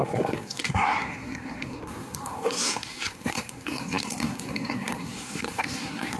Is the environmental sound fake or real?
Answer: fake